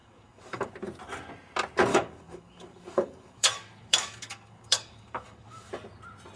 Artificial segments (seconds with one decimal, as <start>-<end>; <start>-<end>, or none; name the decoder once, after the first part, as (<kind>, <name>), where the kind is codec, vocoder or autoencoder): 0.0-0.7 (codec, DAC); 1.9-5.7

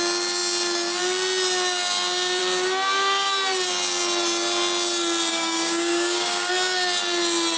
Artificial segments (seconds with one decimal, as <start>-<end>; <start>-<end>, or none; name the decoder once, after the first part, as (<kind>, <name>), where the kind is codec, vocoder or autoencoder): 5.3-6.5 (codec, DAC)

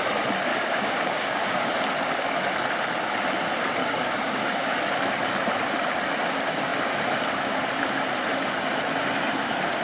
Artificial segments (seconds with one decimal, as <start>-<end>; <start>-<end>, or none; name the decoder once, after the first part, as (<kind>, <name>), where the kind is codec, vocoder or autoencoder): 0.5-1.7 (codec, DAC); 3.8-4.8

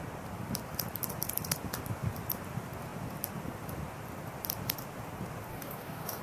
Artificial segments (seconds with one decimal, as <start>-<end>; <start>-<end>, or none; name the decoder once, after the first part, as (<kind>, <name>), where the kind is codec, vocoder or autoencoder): 5.5-6.2 (codec, DAC)

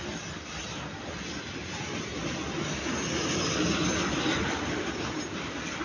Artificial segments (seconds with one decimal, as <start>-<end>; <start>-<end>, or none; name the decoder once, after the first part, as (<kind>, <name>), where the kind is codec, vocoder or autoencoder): none

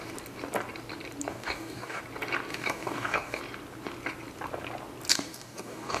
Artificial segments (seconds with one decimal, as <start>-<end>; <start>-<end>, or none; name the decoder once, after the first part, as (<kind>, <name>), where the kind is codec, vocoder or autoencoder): 1.3-2.0 (codec, DAC); 2.5-3.4; 5.1-6.0

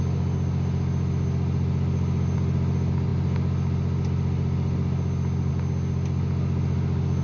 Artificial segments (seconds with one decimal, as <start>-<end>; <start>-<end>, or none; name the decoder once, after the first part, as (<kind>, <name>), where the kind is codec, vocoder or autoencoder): none

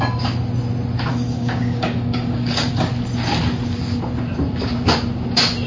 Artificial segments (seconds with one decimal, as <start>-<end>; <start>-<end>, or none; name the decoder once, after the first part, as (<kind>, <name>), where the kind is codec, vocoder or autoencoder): 1.1-2.9 (codec, DAC)